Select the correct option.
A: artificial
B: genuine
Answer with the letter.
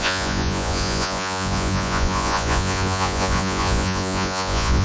A